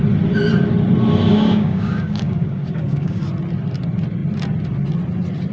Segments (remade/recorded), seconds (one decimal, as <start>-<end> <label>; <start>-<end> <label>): 0.0-1.3 recorded; 1.3-3.2 remade; 3.2-5.5 recorded